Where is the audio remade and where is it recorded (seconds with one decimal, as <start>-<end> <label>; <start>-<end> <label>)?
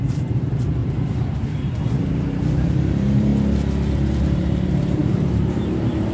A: 0.0-3.3 remade; 3.3-4.2 recorded; 4.2-6.1 remade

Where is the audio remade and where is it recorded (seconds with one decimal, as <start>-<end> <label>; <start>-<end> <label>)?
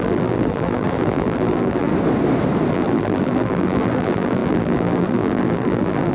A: 0.0-1.9 remade; 1.9-2.7 recorded; 2.7-6.1 remade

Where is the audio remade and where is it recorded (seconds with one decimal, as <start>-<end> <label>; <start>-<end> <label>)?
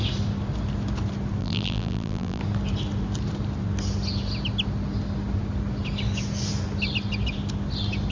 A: 0.0-1.4 recorded; 1.4-2.4 remade; 2.4-8.1 recorded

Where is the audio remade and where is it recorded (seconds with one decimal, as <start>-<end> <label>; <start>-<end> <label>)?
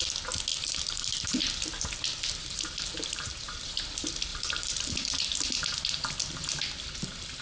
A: 0.0-0.5 recorded; 0.5-1.4 remade; 1.4-2.4 recorded; 2.4-3.7 remade; 3.7-4.3 recorded; 4.3-5.2 remade; 5.2-7.4 recorded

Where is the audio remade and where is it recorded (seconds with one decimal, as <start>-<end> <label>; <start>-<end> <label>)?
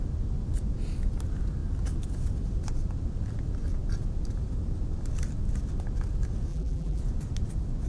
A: 0.0-6.5 recorded; 6.5-7.0 remade; 7.0-7.9 recorded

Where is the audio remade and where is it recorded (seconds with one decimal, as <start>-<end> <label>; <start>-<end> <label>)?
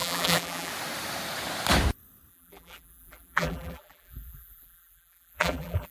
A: 0.0-0.7 remade; 0.7-2.3 recorded; 2.3-5.9 remade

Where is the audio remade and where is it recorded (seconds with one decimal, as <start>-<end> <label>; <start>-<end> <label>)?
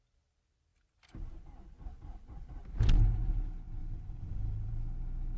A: 0.0-3.8 recorded; 3.8-4.7 remade; 4.7-5.4 recorded